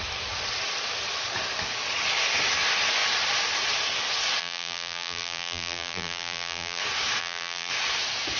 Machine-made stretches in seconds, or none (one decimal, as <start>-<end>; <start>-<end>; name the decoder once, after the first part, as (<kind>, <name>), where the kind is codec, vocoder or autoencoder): 4.4-6.8 (vocoder, BigVGAN v2); 7.2-7.7